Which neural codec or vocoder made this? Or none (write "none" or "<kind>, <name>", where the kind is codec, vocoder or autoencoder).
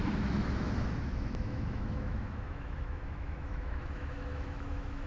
autoencoder, DAC-VAE